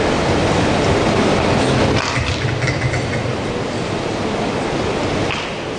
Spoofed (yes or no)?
no